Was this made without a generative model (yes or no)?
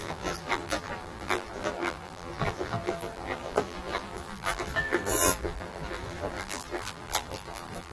no